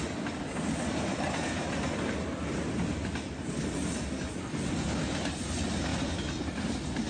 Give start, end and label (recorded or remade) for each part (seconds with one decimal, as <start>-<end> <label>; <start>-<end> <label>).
0.0-7.1 recorded